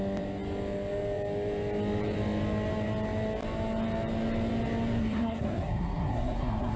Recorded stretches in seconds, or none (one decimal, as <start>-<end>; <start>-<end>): 0.0-5.0